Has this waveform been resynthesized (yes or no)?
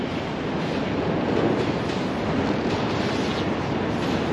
no